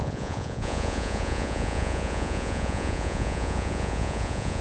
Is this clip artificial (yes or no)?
yes